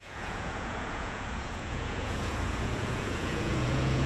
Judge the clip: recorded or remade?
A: remade